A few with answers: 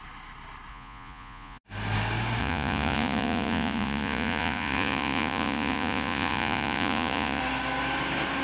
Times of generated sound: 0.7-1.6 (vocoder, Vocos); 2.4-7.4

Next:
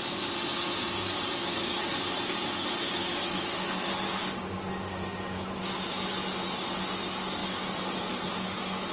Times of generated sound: 1.4-1.9 (autoencoder, DAC-VAE); 3.1-3.9

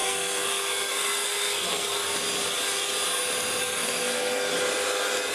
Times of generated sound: 0.0-2.0 (codec, SNAC); 3.6-4.5

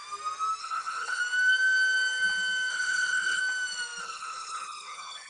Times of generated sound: 0.6-1.2 (codec, HILCodec); 2.7-3.4; 4.0-5.3